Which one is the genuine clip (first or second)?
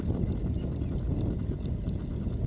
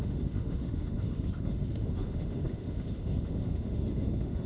first